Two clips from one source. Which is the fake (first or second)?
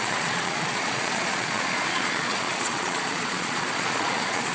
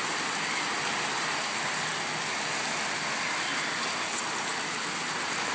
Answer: first